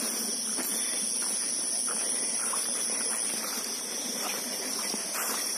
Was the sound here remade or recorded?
recorded